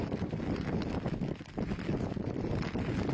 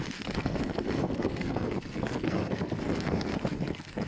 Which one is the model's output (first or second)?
second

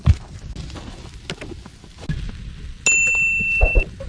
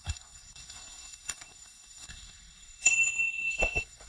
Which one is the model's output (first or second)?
second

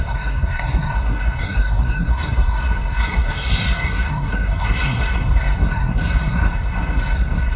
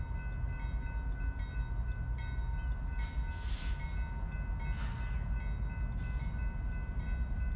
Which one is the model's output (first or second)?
first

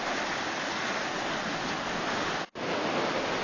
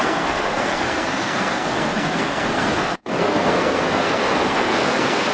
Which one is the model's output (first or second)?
second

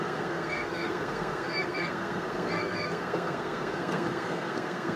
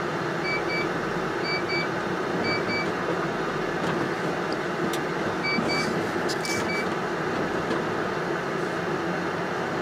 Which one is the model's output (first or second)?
first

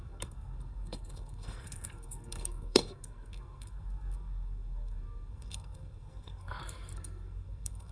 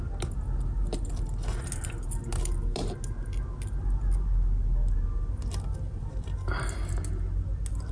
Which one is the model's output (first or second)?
first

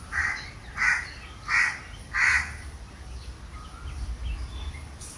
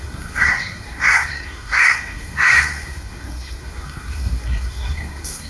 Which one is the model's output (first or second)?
second